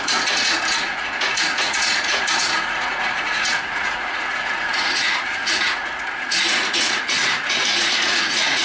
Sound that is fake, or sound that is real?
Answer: fake